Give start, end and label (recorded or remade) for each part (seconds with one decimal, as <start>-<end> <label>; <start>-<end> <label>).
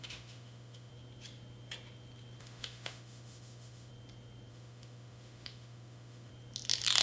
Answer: 0.0-0.9 remade; 0.9-2.4 recorded; 2.4-3.9 remade; 3.9-4.5 recorded; 4.5-6.3 remade; 6.3-7.0 recorded